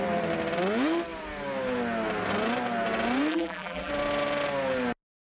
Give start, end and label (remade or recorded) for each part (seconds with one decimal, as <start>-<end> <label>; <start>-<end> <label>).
0.0-3.3 recorded; 3.3-3.9 remade; 3.9-5.2 recorded

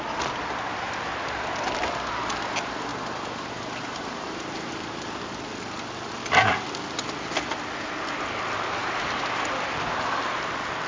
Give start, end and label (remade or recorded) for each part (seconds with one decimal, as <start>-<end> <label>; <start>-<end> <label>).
0.0-2.9 recorded; 2.9-4.7 remade; 4.7-10.9 recorded